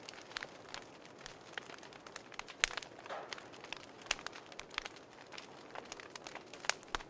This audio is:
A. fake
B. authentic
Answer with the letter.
B